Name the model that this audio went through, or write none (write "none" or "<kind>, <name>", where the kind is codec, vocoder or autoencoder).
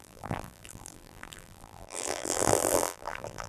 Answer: vocoder, BigVGAN v2